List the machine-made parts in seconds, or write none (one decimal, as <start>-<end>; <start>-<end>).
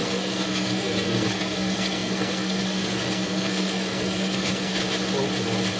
0.0-4.8